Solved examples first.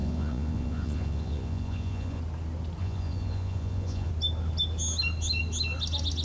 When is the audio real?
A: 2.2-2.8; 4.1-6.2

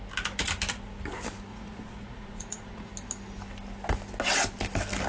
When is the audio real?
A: 0.0-1.5; 2.9-5.1

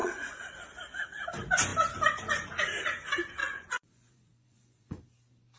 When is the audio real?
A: 0.5-3.4; 5.0-5.6

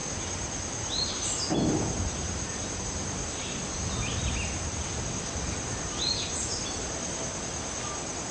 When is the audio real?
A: 0.0-8.3

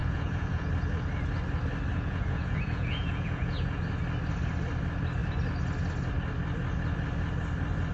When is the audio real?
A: 0.7-1.9; 3.8-7.9

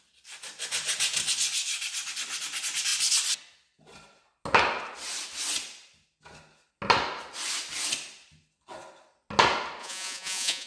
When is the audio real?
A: 0.0-9.8